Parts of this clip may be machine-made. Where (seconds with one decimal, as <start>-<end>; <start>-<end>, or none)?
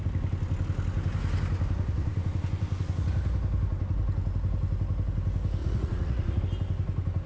5.6-6.4